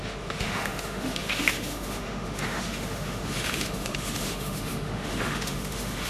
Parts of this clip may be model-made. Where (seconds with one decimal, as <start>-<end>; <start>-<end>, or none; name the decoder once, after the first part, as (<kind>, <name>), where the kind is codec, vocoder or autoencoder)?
0.0-6.1 (autoencoder, DAC-VAE)